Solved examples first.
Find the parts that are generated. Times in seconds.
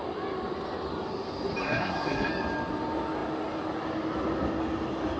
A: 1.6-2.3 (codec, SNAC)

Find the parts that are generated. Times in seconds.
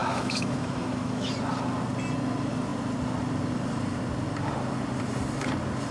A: 0.0-1.3 (autoencoder, DAC-VAE)